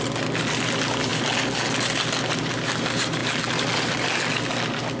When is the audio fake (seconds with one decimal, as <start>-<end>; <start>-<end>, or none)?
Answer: 3.2-4.3